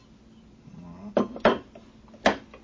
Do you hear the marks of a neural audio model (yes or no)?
no